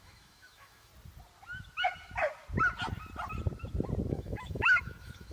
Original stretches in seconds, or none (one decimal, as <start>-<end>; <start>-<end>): 0.9-4.1